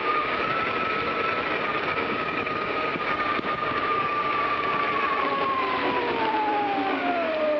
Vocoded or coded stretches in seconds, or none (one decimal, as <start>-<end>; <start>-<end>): 0.0-0.6; 1.7-4.8; 6.5-7.1